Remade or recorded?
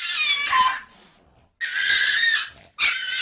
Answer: recorded